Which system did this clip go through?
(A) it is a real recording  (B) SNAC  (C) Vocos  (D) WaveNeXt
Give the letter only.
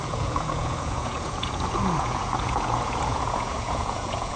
C